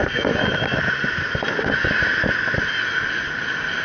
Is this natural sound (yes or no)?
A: yes